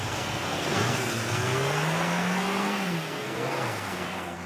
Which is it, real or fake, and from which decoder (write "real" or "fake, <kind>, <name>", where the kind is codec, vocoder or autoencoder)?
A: fake, codec, SNAC